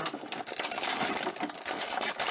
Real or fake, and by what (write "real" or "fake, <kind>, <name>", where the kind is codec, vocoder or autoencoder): real